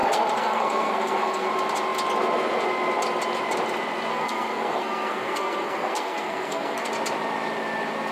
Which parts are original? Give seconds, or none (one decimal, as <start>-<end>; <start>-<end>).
1.5-4.1; 6.9-8.1